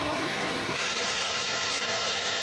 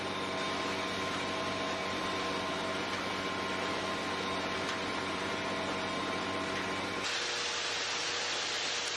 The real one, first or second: second